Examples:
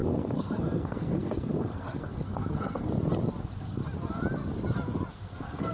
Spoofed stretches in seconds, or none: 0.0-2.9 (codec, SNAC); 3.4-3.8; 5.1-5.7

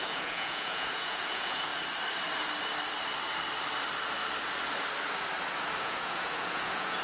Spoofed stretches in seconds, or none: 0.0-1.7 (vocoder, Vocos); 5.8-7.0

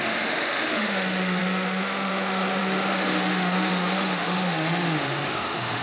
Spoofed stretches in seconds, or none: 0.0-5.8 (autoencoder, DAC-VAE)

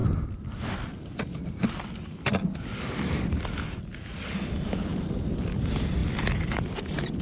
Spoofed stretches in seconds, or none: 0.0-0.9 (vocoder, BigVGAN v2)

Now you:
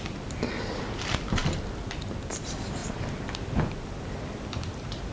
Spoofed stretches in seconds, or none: none